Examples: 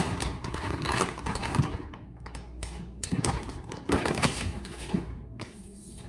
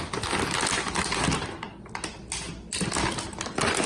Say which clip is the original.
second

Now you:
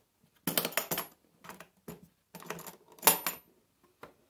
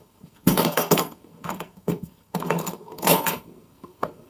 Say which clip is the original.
first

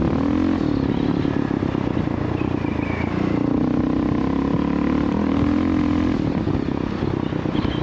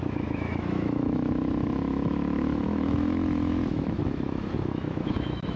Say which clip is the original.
first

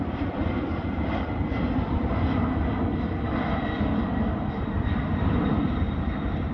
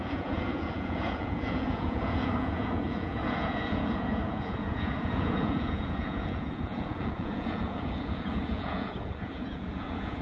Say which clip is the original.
first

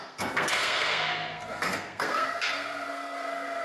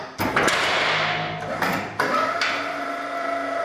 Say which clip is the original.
second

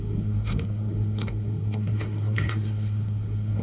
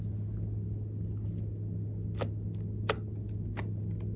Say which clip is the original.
second